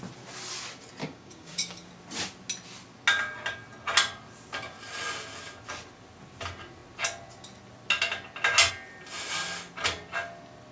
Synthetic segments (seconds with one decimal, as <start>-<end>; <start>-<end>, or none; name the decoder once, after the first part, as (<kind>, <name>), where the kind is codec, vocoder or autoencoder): 1.0-1.9 (codec, DAC)